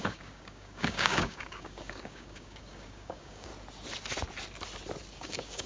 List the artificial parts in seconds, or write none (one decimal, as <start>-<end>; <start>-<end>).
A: 0.0-3.5; 5.2-5.7